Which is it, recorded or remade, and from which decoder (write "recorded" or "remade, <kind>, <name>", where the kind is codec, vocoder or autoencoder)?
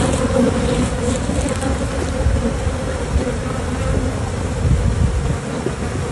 recorded